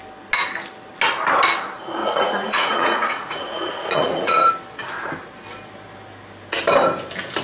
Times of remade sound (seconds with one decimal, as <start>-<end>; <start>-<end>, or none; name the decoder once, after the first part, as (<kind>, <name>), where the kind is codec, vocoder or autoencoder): 2.0-4.5 (vocoder, Vocos)